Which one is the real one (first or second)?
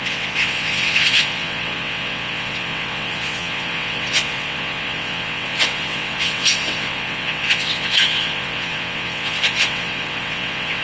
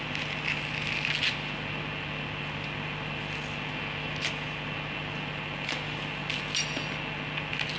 second